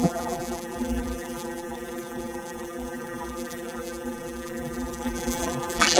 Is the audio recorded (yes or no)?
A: no